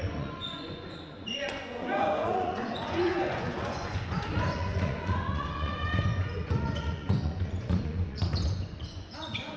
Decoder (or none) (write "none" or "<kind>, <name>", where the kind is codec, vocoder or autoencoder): vocoder, Vocos